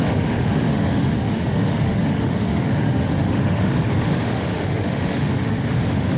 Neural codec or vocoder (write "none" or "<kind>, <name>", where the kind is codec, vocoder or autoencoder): autoencoder, DAC-VAE